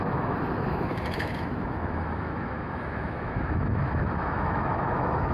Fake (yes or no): yes